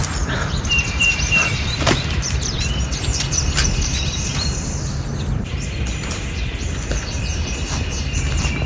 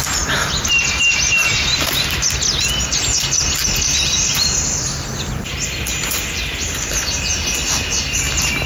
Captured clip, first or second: second